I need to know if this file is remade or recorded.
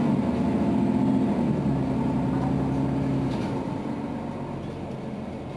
recorded